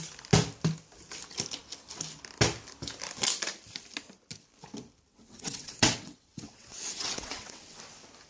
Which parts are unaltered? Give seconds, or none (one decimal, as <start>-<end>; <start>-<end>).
0.0-5.1; 7.8-8.3